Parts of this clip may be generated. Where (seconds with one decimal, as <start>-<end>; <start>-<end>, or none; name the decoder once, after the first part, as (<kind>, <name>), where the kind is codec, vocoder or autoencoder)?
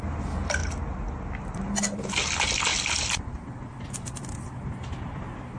none